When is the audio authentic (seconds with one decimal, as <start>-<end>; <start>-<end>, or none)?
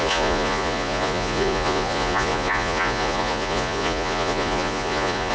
none